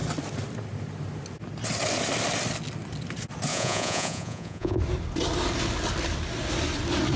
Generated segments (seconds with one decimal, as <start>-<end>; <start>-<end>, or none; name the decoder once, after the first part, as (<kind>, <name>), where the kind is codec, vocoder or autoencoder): 3.5-4.8 (vocoder, Vocos)